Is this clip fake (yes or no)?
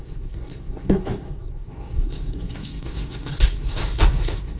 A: yes